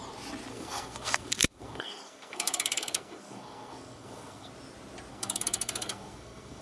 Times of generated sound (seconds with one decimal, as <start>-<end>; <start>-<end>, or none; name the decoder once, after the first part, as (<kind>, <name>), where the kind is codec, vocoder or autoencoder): 0.5-4.5 (codec, SNAC); 5.1-6.6